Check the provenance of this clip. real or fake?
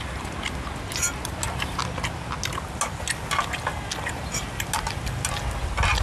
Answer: real